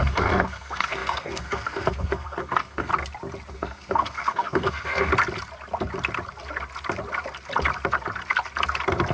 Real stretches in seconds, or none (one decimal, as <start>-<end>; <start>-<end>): 2.9-3.5; 5.1-9.1